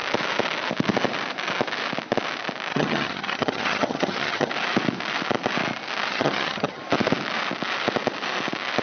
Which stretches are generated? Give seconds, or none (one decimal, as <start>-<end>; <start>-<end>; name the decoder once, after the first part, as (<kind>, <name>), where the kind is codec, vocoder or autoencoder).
2.7-4.5 (vocoder, HiFi-GAN); 6.1-6.8